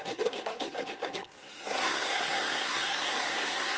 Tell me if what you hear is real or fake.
fake